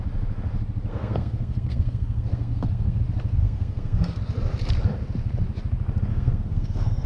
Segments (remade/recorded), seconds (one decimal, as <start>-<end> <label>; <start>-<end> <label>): 0.0-0.9 recorded; 0.9-3.0 remade; 3.0-3.4 recorded; 3.4-4.2 remade; 4.2-6.1 recorded; 6.1-7.1 remade